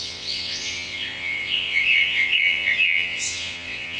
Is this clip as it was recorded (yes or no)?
no